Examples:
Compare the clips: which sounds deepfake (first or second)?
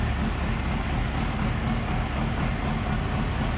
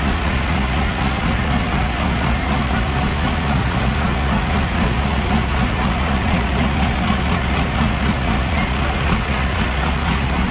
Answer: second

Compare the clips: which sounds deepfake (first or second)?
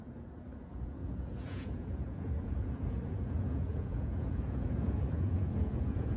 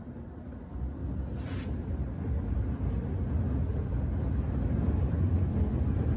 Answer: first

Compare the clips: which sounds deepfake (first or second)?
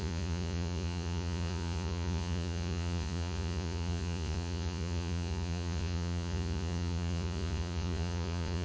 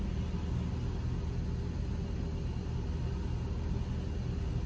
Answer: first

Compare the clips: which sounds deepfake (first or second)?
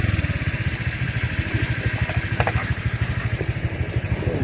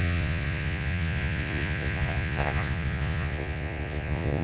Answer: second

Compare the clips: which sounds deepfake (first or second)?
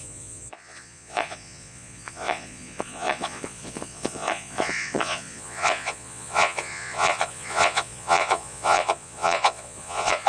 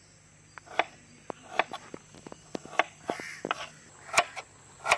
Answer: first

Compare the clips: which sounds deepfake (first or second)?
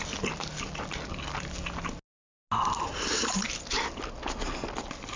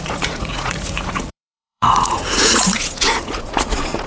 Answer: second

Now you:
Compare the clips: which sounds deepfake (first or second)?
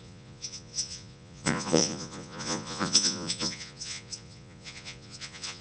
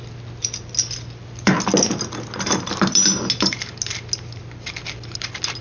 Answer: first